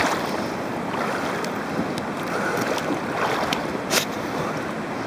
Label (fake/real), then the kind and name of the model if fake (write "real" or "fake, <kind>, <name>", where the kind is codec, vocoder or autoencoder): real